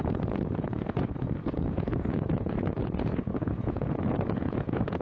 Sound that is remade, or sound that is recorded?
remade